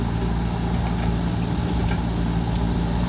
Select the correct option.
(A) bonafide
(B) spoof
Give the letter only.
A